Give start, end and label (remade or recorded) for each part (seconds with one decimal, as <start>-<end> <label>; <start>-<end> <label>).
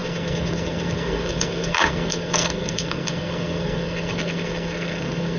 0.0-5.4 remade